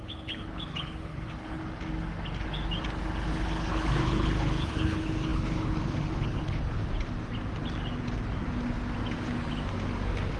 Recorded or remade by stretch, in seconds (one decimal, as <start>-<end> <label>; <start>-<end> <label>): 0.0-1.6 remade; 1.6-3.3 recorded; 3.3-6.8 remade; 6.8-10.4 recorded